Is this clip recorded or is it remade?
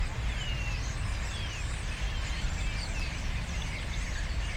recorded